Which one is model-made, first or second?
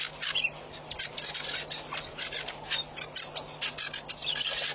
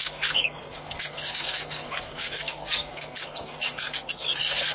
second